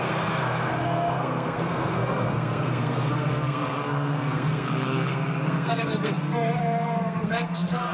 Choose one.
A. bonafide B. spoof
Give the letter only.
B